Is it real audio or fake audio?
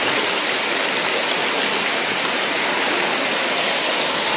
real